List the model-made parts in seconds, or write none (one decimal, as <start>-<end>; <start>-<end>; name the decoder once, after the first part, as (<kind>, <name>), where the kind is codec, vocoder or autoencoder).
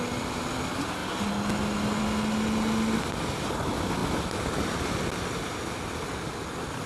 none